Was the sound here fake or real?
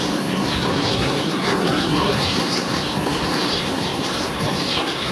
fake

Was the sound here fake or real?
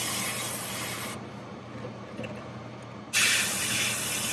real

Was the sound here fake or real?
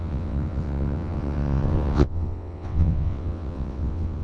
fake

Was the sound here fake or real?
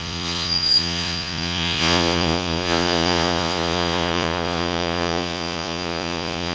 fake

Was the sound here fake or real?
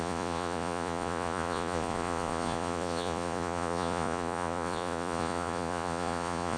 fake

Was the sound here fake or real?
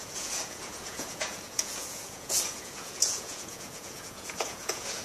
fake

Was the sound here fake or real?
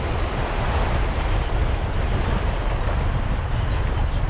real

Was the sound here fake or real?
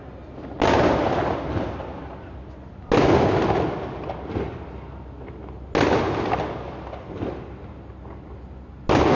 real